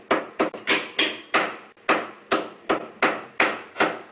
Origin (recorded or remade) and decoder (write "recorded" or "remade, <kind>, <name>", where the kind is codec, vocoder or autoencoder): recorded